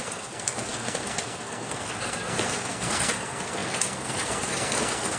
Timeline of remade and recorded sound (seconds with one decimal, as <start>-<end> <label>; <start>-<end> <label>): 0.0-5.2 remade